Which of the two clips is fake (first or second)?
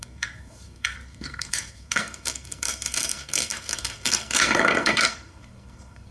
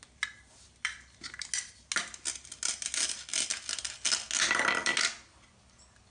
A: first